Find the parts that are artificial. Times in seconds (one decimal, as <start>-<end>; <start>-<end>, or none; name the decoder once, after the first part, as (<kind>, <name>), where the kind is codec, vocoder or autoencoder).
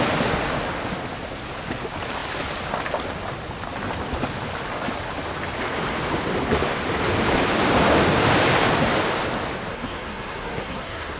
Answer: 9.7-11.2 (codec, SNAC)